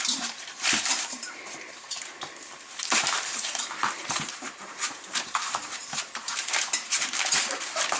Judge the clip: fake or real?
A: fake